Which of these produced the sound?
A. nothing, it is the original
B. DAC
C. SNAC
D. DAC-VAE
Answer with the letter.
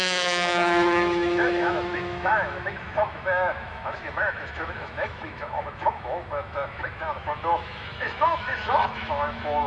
D